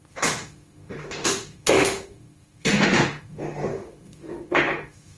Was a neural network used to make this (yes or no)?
yes